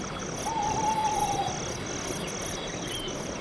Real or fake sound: real